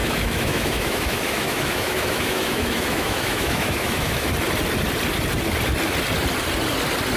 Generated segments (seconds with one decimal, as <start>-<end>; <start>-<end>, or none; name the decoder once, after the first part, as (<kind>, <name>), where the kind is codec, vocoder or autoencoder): 0.0-4.3 (autoencoder, DAC-VAE)